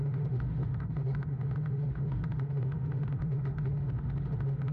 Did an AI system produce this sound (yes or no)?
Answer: yes